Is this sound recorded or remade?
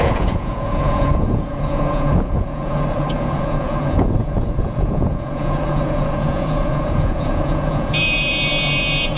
remade